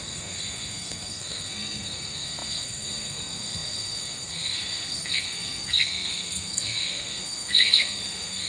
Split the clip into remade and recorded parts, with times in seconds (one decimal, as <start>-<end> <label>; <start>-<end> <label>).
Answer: 0.0-8.5 remade